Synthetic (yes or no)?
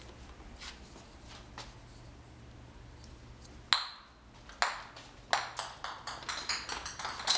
no